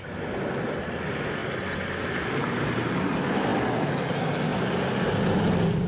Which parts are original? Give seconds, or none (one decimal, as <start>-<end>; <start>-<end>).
0.0-5.9